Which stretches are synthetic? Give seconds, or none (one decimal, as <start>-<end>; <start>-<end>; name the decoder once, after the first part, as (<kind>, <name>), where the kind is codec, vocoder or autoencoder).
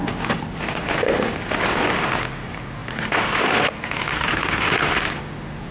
0.0-5.7 (vocoder, BigVGAN v2)